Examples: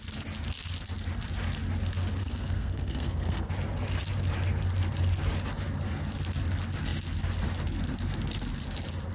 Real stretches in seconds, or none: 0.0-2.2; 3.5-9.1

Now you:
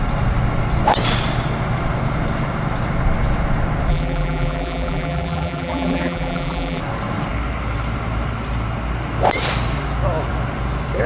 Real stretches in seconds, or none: 0.0-3.9; 6.8-11.1

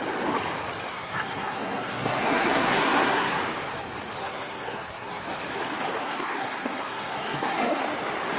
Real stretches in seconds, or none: 0.0-0.9; 3.4-4.2; 5.2-6.0; 7.8-8.4

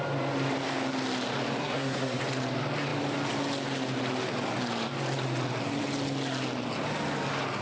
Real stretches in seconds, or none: 0.0-1.6; 2.2-7.6

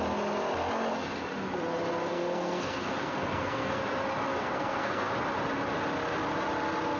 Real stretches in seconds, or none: 0.0-2.1; 3.8-4.4; 5.1-7.0

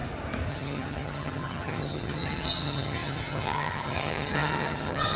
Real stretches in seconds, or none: 0.0-0.5